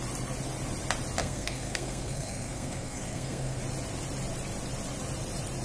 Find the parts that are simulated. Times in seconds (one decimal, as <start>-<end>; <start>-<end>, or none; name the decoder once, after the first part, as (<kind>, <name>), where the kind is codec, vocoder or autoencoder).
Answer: 1.2-3.6 (codec, SNAC)